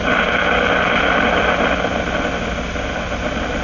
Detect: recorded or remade recorded